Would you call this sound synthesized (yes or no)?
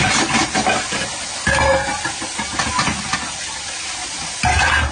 no